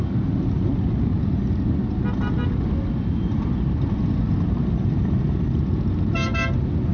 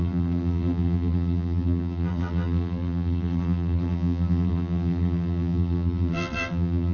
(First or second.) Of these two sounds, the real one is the first